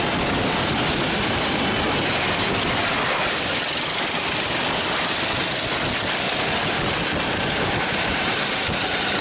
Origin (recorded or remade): recorded